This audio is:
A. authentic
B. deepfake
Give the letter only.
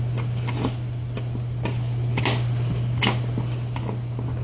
A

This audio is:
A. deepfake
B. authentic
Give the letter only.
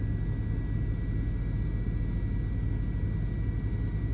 B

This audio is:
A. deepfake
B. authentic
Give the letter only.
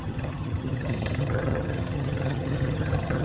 A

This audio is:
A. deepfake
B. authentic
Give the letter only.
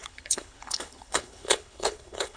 A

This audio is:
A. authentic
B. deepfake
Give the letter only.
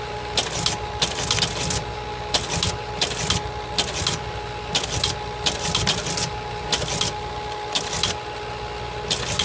A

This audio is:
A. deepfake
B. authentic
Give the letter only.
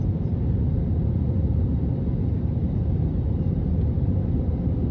B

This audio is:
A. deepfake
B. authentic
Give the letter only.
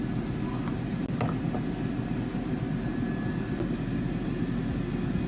B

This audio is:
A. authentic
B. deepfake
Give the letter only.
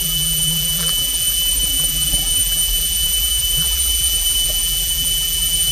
B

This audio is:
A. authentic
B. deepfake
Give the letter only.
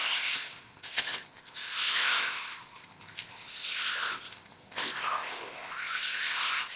B